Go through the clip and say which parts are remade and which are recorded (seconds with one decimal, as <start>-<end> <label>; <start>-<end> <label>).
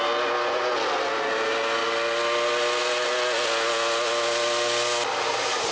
0.0-5.7 recorded